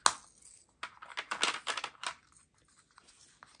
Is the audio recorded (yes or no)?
yes